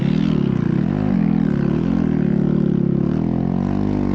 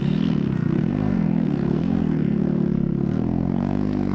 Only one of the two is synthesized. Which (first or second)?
second